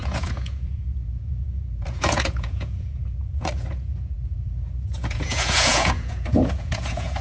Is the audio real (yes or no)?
no